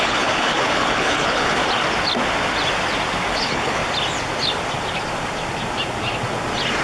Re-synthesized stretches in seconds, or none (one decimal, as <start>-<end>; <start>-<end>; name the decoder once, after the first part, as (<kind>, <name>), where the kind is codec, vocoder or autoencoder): 0.0-1.6 (codec, HILCodec); 3.3-3.8